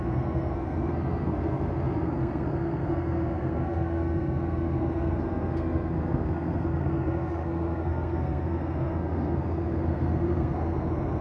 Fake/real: fake